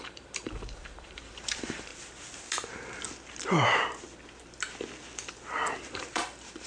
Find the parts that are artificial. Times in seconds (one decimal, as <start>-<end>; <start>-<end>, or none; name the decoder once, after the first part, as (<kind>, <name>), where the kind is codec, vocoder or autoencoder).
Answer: 0.0-1.9 (vocoder, BigVGAN v2); 5.8-6.7